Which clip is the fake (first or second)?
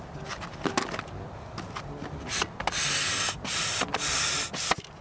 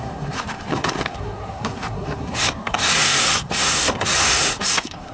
second